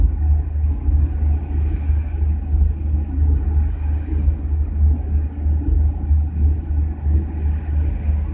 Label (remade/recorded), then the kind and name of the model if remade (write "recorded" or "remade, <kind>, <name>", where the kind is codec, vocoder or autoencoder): recorded